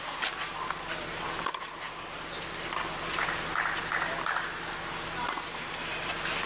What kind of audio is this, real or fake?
real